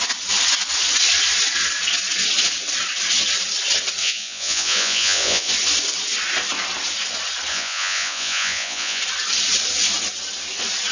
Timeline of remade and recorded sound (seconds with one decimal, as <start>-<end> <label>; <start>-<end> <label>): 0.0-4.0 recorded; 4.0-5.5 remade; 5.5-7.5 recorded; 7.5-9.0 remade; 9.0-10.9 recorded